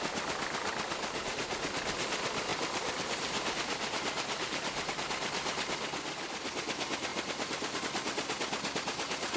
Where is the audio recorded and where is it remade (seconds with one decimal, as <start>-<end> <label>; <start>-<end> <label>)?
0.0-2.5 recorded; 2.5-4.9 remade; 4.9-7.1 recorded; 7.1-7.8 remade; 7.8-9.4 recorded